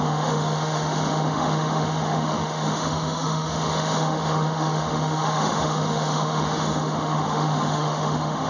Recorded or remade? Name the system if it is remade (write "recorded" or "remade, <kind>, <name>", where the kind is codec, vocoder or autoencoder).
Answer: remade, autoencoder, DAC-VAE